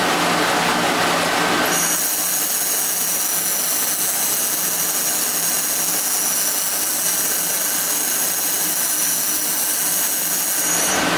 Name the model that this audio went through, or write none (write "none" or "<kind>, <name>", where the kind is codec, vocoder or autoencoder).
none